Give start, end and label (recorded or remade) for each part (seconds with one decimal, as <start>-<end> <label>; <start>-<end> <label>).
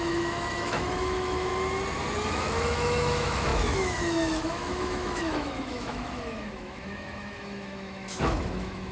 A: 0.0-1.5 remade; 1.5-2.3 recorded; 2.3-8.9 remade